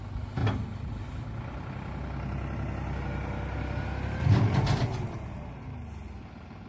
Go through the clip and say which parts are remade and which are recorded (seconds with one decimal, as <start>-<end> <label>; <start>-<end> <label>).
0.0-6.7 recorded